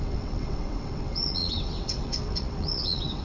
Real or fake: fake